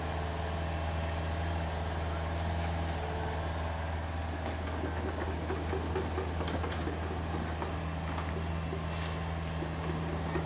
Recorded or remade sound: recorded